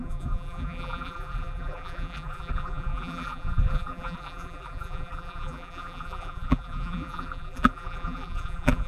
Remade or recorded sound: remade